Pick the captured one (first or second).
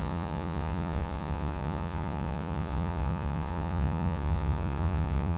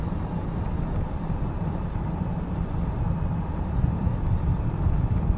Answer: second